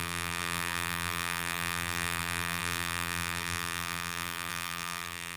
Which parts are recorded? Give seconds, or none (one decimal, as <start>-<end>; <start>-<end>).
none

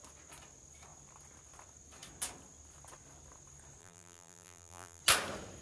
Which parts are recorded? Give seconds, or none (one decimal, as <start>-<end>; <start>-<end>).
0.0-3.8; 5.0-5.6

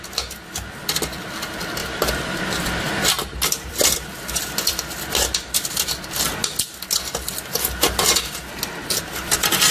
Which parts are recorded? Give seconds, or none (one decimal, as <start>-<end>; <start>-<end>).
0.0-1.8; 6.0-9.7

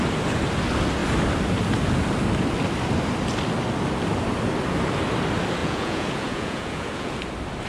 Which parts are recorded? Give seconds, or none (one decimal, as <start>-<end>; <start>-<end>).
0.0-5.6; 7.2-7.7

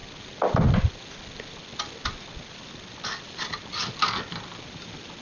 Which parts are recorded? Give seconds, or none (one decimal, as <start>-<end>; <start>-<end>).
0.0-5.2

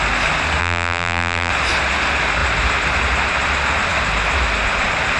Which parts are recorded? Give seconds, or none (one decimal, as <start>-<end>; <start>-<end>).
0.0-0.6; 1.5-5.2

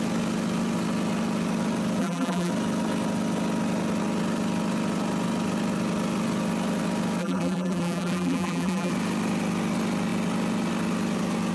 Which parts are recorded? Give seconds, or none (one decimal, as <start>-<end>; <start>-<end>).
0.0-2.0; 2.5-7.2; 8.9-11.5